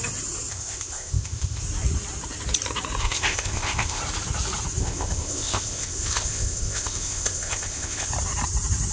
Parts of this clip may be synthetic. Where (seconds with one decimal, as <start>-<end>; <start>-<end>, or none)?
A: 0.5-1.6; 3.0-4.0; 4.8-8.1